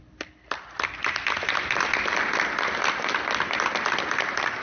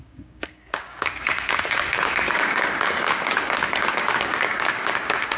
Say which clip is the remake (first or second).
second